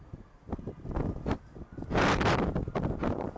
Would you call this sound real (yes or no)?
no